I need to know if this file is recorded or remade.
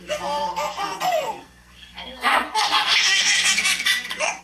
remade